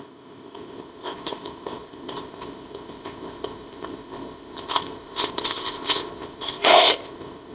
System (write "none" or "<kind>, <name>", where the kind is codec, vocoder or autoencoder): codec, ZipCodec